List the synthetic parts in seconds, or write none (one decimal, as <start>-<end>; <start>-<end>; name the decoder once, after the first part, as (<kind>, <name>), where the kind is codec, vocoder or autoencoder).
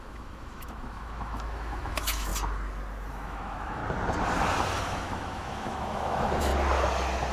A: 0.0-2.3 (autoencoder, DAC-VAE); 3.1-3.8; 4.8-6.5